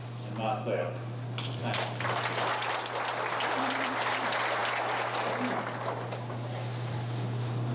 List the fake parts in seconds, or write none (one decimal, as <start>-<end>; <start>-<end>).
none